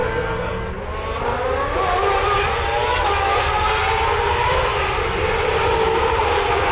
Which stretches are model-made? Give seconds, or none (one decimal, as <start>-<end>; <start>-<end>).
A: none